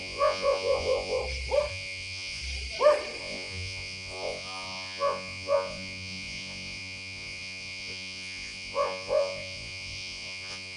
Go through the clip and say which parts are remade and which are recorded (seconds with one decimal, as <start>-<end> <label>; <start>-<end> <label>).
0.0-1.2 remade; 1.2-1.7 recorded; 1.7-2.4 remade; 2.4-3.2 recorded; 3.2-10.8 remade